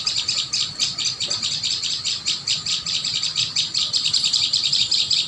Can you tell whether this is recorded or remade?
recorded